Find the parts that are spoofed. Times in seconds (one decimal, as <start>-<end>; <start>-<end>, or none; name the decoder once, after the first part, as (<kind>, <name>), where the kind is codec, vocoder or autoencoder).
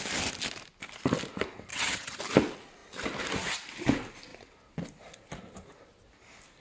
1.7-2.2 (vocoder, HiFi-GAN)